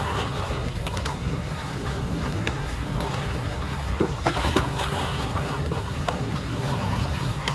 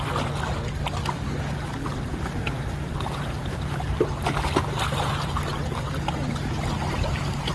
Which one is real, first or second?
second